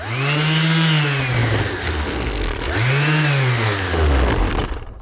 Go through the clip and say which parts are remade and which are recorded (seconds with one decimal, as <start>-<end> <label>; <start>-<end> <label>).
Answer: 0.0-5.0 recorded